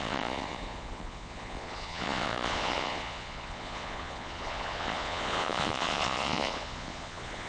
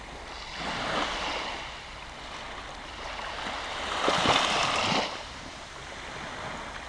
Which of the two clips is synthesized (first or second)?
first